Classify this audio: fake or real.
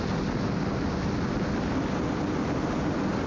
real